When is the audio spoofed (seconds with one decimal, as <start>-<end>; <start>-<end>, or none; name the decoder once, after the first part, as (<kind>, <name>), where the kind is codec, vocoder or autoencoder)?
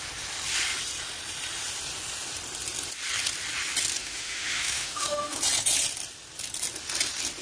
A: 4.0-5.4 (autoencoder, DAC-VAE)